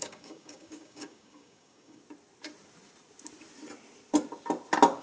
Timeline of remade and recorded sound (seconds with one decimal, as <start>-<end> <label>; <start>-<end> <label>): 0.0-2.0 remade; 2.0-5.0 recorded